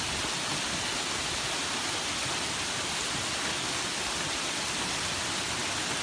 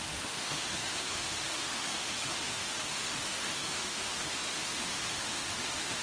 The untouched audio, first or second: first